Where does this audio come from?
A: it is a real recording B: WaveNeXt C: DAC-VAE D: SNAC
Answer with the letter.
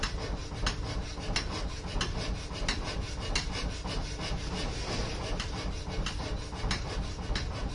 A